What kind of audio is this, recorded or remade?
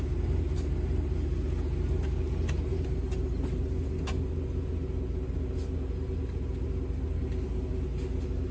recorded